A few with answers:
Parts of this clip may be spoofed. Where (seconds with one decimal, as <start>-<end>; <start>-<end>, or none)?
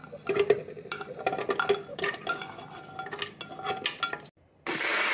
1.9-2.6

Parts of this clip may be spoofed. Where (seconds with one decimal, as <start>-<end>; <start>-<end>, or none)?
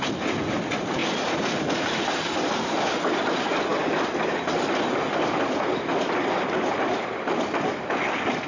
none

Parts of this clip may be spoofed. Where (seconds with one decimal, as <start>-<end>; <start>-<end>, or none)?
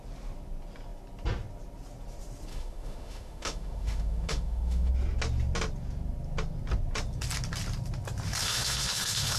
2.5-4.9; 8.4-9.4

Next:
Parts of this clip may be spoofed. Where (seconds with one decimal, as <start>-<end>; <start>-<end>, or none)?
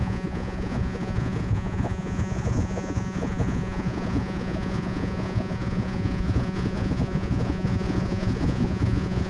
0.0-9.3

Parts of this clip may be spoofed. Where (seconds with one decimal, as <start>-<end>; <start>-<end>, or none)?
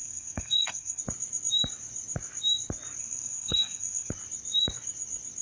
0.0-1.0; 3.0-4.1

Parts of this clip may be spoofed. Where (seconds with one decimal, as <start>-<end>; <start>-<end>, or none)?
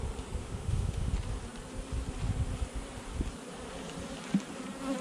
0.4-1.1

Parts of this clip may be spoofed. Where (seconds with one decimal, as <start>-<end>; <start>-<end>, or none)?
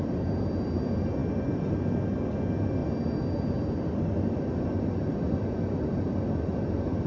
none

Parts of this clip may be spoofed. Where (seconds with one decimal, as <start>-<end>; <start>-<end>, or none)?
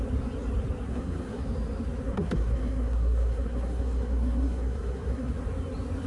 0.9-1.4; 2.1-5.3